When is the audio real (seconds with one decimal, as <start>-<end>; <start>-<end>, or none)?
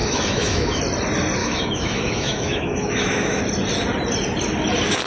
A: 0.8-1.4; 3.4-5.1